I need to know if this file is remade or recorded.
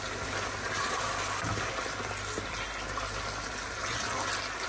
recorded